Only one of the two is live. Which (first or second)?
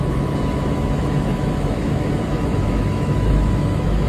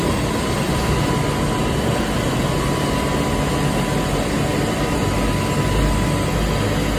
second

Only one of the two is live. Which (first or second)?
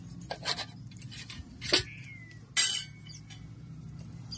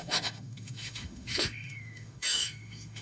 first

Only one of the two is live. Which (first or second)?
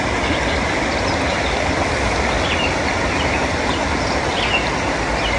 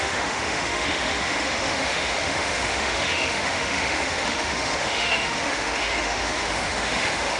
first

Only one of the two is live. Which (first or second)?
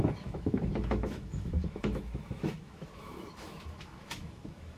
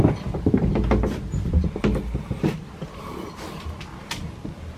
second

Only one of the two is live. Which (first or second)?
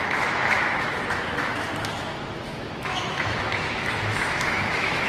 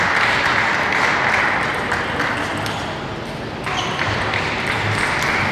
second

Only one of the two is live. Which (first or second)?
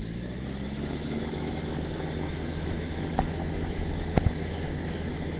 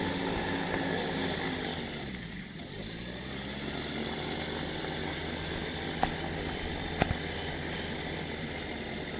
second